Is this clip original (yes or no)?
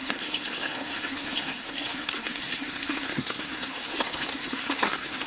no